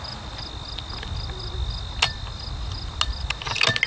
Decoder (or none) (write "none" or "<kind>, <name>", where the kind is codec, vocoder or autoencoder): none